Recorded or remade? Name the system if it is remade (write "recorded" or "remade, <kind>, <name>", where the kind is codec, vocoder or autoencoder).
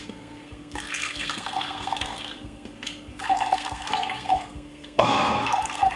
remade, codec, SNAC